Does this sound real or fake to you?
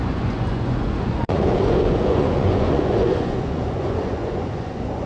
fake